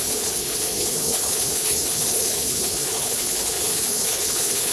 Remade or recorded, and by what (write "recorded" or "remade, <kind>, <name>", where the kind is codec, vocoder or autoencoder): remade, codec, HILCodec